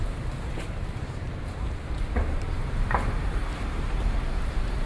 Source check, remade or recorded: remade